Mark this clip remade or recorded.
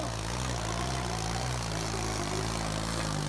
recorded